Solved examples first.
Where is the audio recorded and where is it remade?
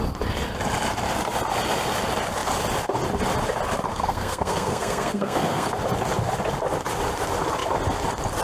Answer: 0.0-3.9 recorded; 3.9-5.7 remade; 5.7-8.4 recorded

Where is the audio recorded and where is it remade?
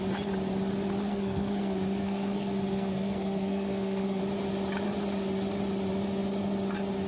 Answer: 0.0-1.1 recorded; 1.1-4.2 remade; 4.2-7.1 recorded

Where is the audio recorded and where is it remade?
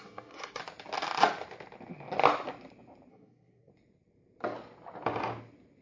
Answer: 0.0-0.6 remade; 0.6-3.1 recorded; 3.1-3.7 remade; 3.7-5.8 recorded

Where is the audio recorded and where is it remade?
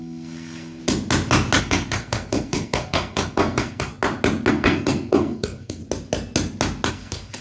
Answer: 0.0-0.8 remade; 0.8-1.6 recorded; 1.6-3.9 remade; 3.9-4.5 recorded; 4.5-5.8 remade; 5.8-6.9 recorded; 6.9-7.4 remade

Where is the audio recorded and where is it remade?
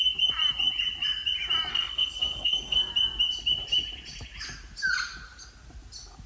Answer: 0.0-1.7 recorded; 1.7-2.9 remade; 2.9-6.3 recorded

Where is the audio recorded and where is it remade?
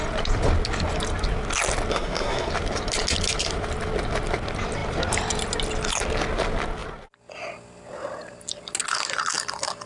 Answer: 0.0-1.9 recorded; 1.9-2.5 remade; 2.5-9.9 recorded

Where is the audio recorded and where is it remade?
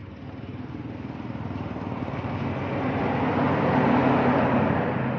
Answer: 0.0-5.2 recorded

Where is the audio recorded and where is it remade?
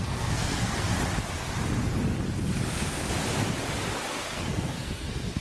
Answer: 0.0-0.9 remade; 0.9-4.1 recorded; 4.1-5.4 remade